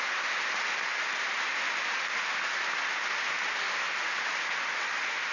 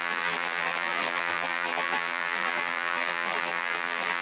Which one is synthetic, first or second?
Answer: second